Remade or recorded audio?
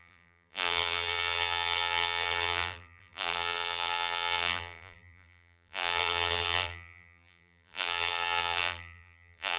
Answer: remade